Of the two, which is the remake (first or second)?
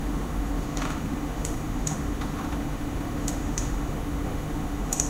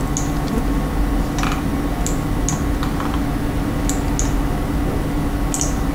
first